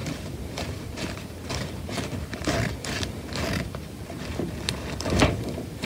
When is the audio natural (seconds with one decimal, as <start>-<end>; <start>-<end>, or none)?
1.5-5.8